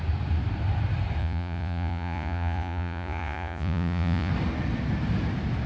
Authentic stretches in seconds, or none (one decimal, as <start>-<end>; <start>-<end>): 0.0-1.2; 4.3-5.7